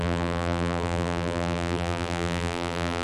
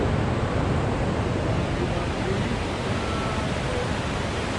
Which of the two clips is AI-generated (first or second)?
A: first